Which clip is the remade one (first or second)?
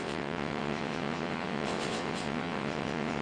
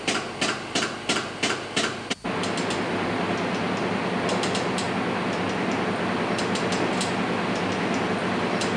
first